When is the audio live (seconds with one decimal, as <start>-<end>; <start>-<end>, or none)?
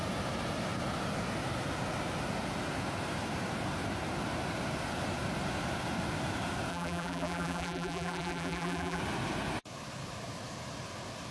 0.0-6.7; 9.0-11.3